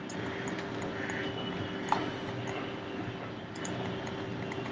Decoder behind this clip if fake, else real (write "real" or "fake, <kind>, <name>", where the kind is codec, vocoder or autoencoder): real